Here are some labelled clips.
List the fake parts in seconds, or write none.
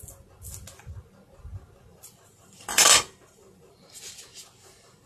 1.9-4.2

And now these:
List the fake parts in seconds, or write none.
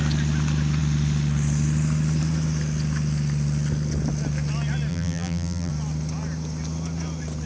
4.9-5.7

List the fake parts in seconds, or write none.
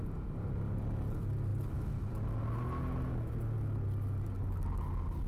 none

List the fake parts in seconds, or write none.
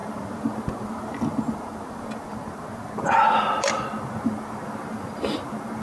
none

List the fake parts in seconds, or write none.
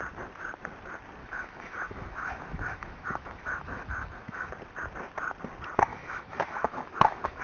1.2-4.5; 5.9-7.4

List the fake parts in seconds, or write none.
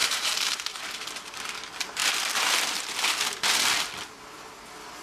0.0-0.8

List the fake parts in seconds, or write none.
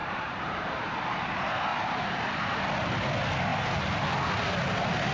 0.0-0.9; 1.7-2.3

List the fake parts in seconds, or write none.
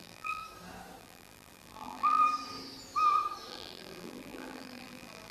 0.0-0.4; 1.0-2.2; 3.5-5.3